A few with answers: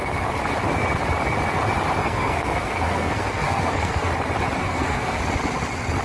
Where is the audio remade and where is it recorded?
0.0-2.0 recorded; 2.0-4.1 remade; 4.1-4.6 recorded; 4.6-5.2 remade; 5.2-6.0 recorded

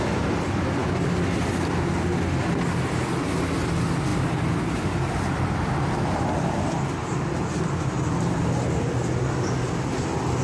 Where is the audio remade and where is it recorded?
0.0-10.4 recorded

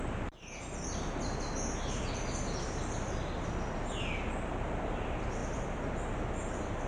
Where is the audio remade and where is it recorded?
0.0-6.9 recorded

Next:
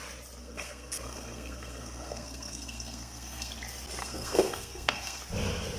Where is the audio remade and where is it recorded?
0.0-0.4 recorded; 0.4-3.5 remade; 3.5-4.0 recorded; 4.0-5.2 remade; 5.2-5.8 recorded

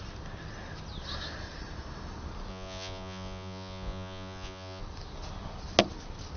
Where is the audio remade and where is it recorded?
0.0-2.5 recorded; 2.5-4.8 remade; 4.8-6.4 recorded

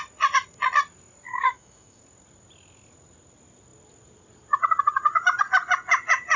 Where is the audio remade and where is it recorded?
0.0-1.3 recorded; 1.3-2.0 remade; 2.0-6.4 recorded